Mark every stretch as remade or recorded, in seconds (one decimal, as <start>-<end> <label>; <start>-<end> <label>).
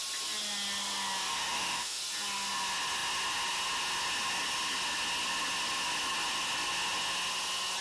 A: 0.0-1.3 recorded; 1.3-2.0 remade; 2.0-7.8 recorded